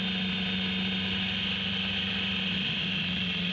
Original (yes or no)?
yes